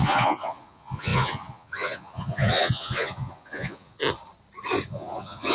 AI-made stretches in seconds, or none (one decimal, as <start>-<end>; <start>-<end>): 0.0-4.0; 4.9-5.5